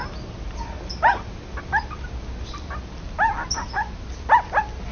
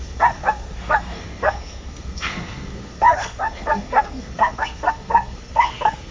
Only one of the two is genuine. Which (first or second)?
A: first